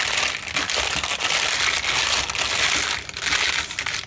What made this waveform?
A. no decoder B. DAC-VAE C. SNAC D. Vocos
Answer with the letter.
A